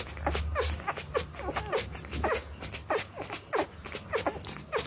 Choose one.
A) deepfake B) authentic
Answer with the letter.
B